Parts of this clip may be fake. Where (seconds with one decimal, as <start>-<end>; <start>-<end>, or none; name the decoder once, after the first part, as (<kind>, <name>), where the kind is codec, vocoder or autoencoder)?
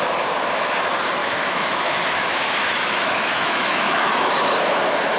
1.2-4.3 (autoencoder, DAC-VAE)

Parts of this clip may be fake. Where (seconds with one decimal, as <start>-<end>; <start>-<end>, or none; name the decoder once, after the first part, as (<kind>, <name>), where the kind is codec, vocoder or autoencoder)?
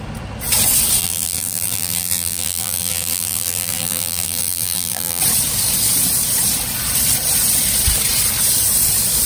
1.0-5.2 (vocoder, BigVGAN v2)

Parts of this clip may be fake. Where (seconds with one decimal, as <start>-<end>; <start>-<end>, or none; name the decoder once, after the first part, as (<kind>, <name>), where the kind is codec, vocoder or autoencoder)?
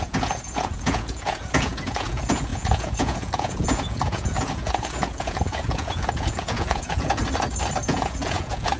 0.0-7.2 (vocoder, Vocos); 7.8-8.8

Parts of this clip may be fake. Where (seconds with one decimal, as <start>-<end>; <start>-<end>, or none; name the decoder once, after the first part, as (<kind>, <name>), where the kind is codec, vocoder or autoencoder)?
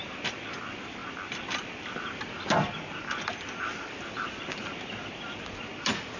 none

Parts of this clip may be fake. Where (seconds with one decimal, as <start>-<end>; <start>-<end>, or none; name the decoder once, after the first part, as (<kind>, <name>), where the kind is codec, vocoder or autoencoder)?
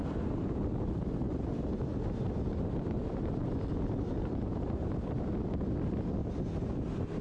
0.0-6.2 (vocoder, BigVGAN v2)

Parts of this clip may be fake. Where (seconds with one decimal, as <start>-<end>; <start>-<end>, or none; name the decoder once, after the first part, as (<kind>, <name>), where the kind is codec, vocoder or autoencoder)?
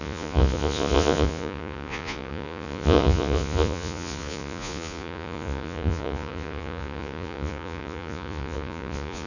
0.0-9.3 (vocoder, Vocos)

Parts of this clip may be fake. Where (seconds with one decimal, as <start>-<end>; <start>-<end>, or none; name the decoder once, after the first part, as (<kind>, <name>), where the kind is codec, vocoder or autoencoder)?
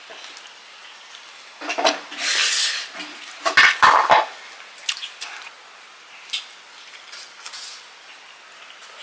none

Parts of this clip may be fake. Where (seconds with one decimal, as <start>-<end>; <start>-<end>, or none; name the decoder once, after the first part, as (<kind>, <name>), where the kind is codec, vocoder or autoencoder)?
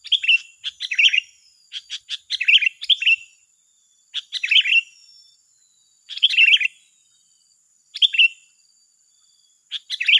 1.1-2.0 (vocoder, Vocos); 5.4-6.3